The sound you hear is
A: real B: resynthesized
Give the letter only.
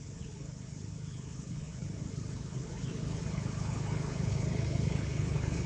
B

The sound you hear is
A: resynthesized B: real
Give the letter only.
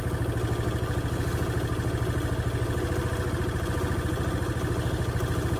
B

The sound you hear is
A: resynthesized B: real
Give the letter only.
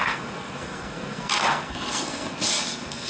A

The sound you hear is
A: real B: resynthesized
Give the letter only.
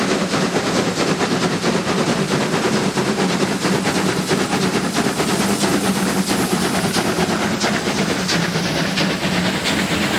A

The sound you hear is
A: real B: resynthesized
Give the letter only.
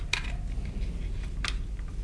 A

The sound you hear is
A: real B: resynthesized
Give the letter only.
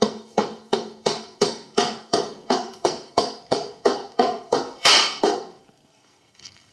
B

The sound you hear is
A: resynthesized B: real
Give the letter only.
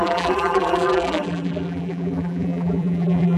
A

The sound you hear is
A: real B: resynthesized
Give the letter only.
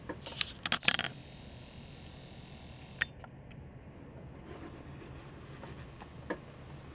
A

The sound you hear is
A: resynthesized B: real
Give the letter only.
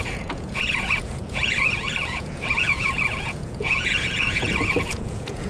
A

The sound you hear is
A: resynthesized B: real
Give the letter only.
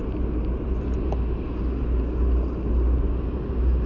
B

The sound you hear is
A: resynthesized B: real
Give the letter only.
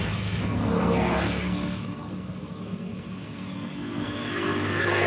A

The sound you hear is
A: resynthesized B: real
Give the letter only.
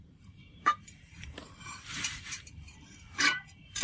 A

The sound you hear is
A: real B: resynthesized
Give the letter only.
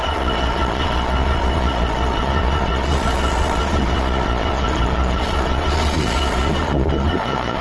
B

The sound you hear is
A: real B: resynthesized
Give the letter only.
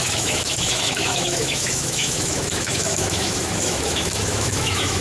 B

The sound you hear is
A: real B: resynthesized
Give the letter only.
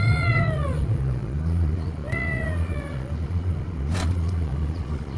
B